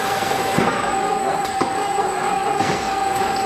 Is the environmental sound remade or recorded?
remade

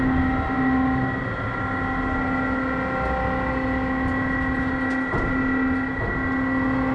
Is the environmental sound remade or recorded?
recorded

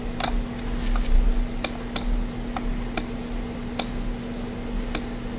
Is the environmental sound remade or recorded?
recorded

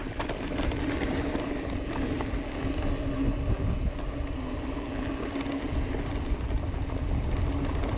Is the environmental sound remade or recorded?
recorded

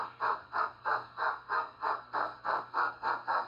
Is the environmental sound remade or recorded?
remade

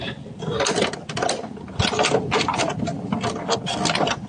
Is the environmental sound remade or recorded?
recorded